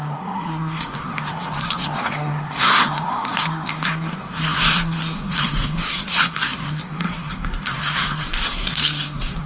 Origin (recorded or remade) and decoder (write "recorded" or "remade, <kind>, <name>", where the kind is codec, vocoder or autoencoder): remade, codec, SNAC